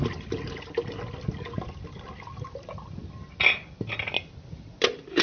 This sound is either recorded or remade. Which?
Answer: recorded